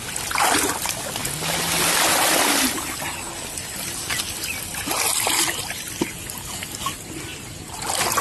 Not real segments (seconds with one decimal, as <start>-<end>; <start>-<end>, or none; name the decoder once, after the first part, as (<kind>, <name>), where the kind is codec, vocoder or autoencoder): none